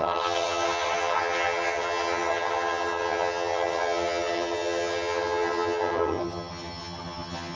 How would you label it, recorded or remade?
remade